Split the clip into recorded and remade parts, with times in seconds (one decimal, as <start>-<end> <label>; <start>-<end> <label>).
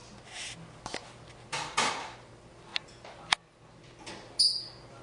0.0-5.0 recorded